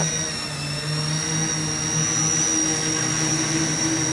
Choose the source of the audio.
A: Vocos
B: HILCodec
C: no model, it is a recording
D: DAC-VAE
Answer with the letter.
C